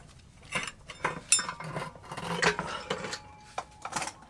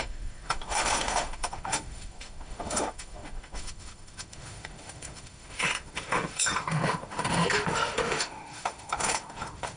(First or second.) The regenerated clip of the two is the second